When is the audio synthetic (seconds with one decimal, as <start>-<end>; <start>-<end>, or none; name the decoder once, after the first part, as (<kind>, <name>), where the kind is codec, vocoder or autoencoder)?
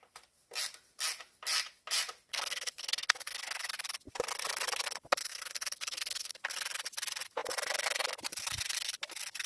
2.3-3.7 (codec, SNAC); 5.2-6.3